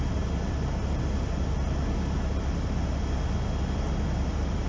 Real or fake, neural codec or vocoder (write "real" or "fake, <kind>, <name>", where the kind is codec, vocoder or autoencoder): real